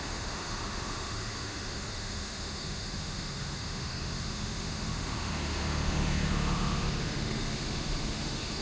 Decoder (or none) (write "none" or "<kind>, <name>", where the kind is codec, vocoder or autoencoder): autoencoder, DAC-VAE